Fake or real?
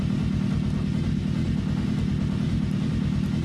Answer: real